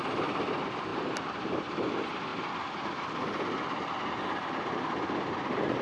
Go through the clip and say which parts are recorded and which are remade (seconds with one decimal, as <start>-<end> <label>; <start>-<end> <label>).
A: 0.0-0.9 recorded; 0.9-1.9 remade; 1.9-5.8 recorded